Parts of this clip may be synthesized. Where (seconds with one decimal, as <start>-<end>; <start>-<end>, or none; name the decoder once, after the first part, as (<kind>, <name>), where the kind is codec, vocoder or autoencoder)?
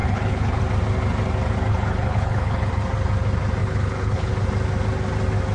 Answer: 0.0-0.6 (codec, HILCodec); 1.7-2.7; 3.6-4.3